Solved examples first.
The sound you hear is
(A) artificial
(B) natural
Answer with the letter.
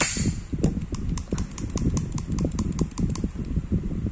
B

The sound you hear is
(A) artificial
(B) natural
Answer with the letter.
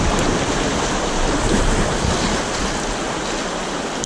B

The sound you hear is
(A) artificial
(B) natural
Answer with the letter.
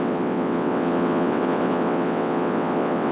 A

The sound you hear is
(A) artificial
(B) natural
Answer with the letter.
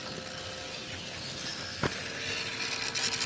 B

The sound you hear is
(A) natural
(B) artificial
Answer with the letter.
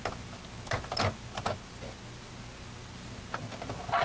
A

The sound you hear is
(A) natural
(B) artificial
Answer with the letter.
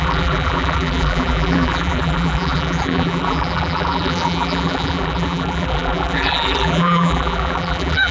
B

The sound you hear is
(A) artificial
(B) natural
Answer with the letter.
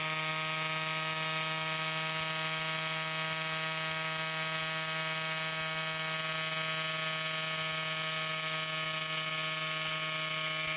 B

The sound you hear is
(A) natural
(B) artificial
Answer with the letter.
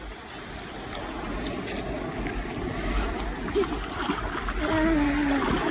A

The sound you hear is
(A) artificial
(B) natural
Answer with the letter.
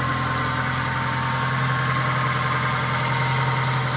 B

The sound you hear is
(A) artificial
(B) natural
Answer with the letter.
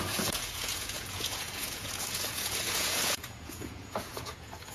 A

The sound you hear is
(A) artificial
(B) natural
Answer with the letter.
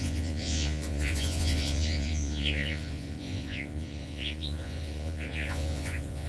A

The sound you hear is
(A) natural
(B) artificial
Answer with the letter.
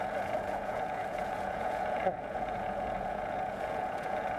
B